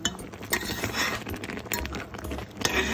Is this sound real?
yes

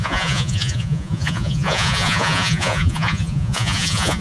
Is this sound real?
no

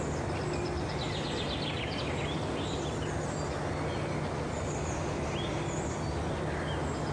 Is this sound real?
yes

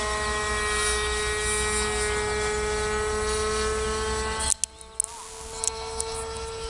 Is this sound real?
yes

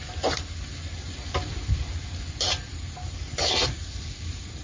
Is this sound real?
yes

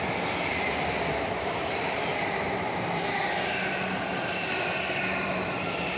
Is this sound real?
yes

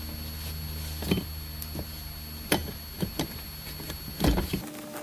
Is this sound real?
yes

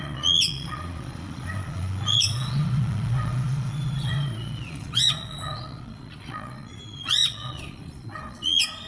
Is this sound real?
no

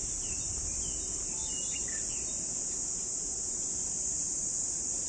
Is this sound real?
yes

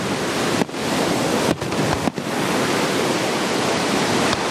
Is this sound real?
no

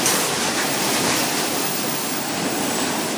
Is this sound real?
yes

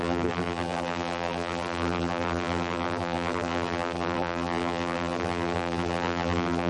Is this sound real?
no